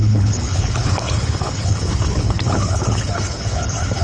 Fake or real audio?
fake